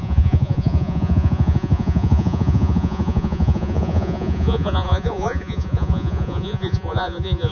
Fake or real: fake